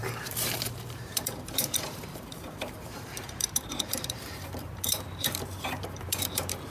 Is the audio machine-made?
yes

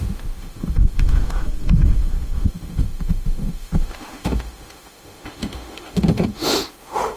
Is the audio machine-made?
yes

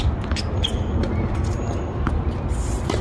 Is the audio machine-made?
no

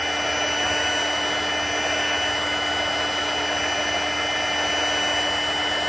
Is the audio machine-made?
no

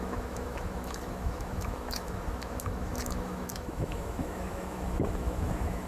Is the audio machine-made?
yes